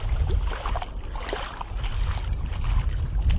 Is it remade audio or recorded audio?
recorded